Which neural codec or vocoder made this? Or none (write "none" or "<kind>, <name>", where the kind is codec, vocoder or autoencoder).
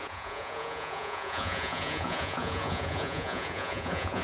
vocoder, Vocos